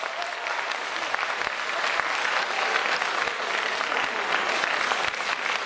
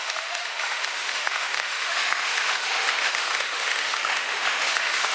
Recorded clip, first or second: first